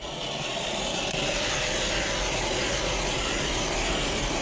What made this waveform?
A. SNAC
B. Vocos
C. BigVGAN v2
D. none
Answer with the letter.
D